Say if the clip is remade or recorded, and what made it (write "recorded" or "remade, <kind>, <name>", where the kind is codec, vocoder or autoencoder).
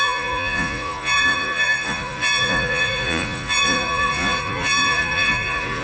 remade, vocoder, Vocos